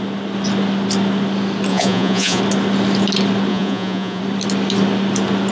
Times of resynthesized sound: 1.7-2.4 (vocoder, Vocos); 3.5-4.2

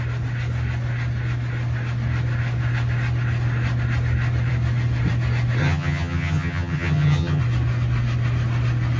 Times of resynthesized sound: 5.6-7.4 (vocoder, HiFi-GAN)

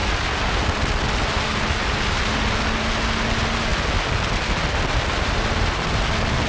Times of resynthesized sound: none

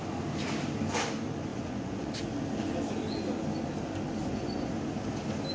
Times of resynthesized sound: 1.5-2.1 (vocoder, Vocos); 4.2-4.7

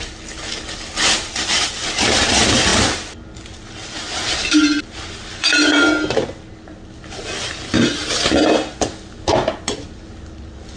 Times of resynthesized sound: none

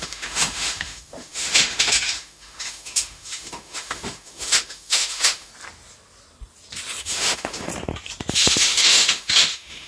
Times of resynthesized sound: 0.0-5.5 (autoencoder, DAC-VAE); 7.0-7.7; 8.3-9.9

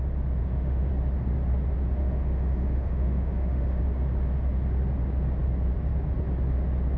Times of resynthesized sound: 0.4-0.9 (autoencoder, DAC-VAE); 2.0-3.8

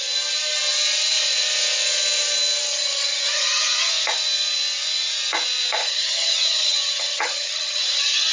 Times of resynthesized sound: 2.7-3.9 (vocoder, HiFi-GAN); 5.8-8.3